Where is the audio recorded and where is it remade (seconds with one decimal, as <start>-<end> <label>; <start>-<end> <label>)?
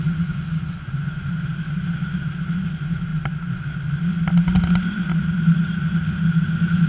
0.0-1.3 remade; 1.3-6.9 recorded